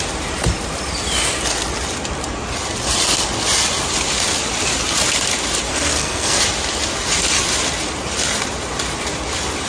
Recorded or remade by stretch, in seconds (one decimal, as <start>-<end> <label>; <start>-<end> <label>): 0.0-5.7 recorded; 5.7-6.4 remade; 6.4-9.7 recorded